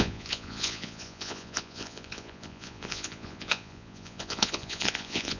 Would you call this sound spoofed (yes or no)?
yes